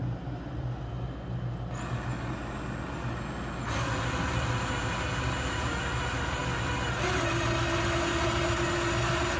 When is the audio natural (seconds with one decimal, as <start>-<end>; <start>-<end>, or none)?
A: 0.0-9.4